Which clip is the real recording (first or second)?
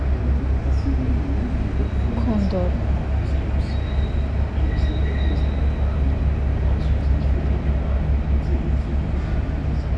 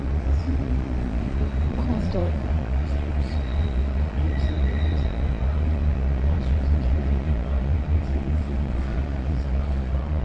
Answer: first